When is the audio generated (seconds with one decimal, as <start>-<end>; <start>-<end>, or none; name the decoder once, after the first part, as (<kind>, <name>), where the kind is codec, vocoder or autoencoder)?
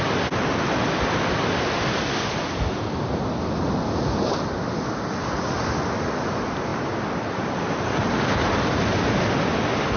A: 6.7-7.8 (vocoder, BigVGAN v2)